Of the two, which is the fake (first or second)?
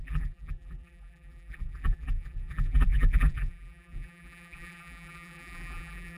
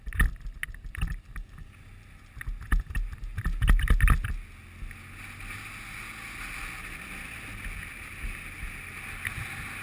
first